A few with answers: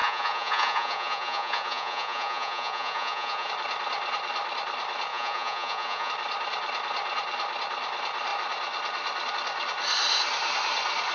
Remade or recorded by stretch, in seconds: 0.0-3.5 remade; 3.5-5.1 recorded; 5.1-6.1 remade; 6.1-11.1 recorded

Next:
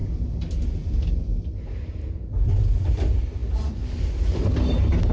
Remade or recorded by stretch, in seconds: 0.0-3.4 recorded; 3.4-4.1 remade; 4.1-5.1 recorded

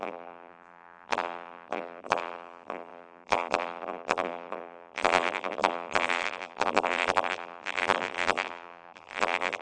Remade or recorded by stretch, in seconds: 0.0-9.6 remade

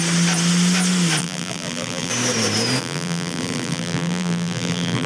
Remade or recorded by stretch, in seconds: 0.0-1.2 recorded; 1.2-2.1 remade; 2.1-2.8 recorded; 2.8-5.1 remade